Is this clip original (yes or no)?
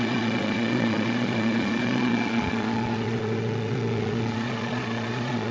no